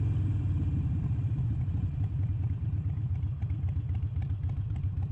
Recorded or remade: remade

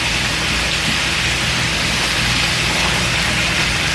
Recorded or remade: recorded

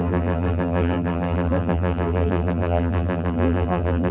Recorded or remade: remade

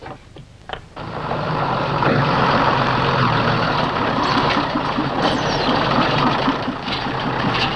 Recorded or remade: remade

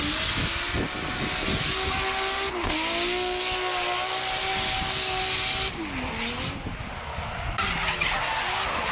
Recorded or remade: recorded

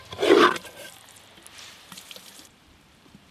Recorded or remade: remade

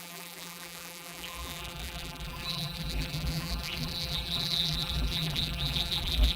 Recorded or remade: remade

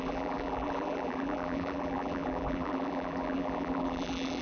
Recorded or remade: remade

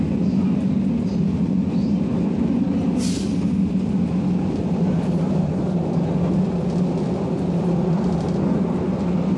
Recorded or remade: recorded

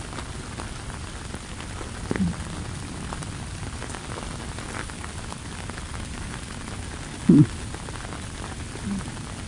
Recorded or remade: recorded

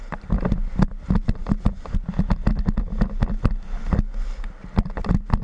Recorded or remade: recorded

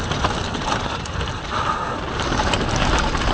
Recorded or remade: recorded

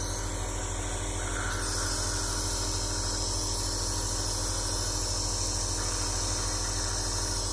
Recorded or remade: recorded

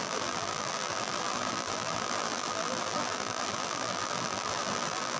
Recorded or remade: remade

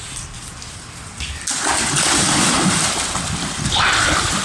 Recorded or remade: remade